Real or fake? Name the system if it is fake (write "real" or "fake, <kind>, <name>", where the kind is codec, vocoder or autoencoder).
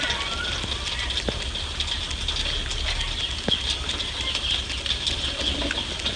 real